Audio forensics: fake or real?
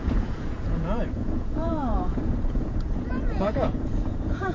fake